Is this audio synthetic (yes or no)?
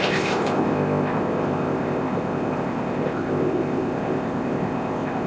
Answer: yes